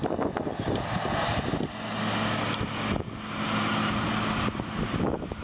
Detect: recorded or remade recorded